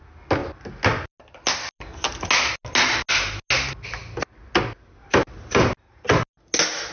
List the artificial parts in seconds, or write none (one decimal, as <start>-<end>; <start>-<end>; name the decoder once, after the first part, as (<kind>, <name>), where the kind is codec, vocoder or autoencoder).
none